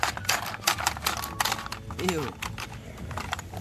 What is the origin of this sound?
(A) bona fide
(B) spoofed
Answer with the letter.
A